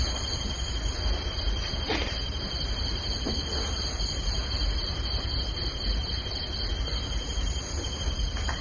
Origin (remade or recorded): recorded